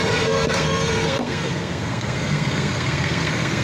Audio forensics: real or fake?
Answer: fake